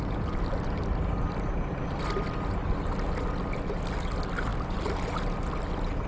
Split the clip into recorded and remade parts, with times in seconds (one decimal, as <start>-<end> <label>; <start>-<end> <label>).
0.0-6.1 recorded